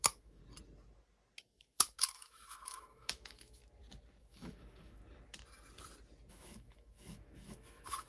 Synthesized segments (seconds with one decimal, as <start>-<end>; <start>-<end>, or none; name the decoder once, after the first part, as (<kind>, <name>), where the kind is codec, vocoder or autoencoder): 0.0-0.4 (autoencoder, DAC-VAE); 1.4-3.6; 4.2-5.0; 6.3-8.1